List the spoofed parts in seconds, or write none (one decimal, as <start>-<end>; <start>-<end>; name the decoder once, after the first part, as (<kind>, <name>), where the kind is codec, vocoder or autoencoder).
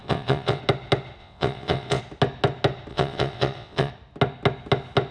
0.0-0.6 (vocoder, WaveNeXt); 1.2-2.0; 2.9-3.9